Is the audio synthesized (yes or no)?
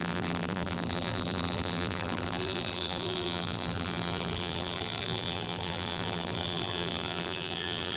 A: yes